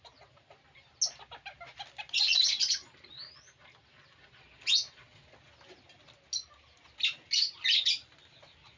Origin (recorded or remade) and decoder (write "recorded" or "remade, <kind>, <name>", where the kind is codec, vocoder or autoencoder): recorded